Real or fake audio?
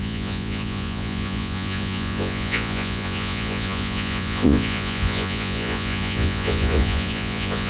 fake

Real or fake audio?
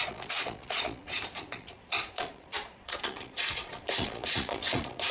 fake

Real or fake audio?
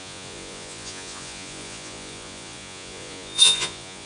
fake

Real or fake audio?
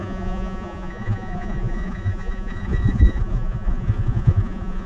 fake